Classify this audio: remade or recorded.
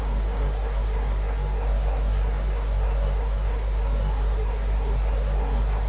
remade